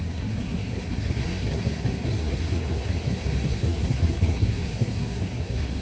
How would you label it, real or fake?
fake